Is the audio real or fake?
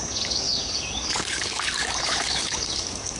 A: fake